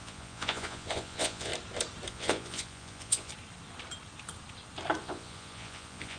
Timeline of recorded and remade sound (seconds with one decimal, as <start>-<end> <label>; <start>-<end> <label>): 0.0-1.5 remade; 1.5-2.1 recorded; 2.1-3.3 remade; 3.3-5.0 recorded; 5.0-6.2 remade